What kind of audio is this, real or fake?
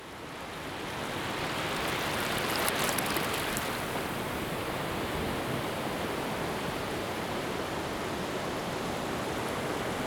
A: real